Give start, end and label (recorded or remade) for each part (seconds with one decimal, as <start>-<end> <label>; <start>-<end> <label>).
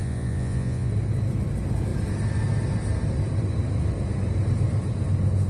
0.0-0.9 remade; 0.9-5.5 recorded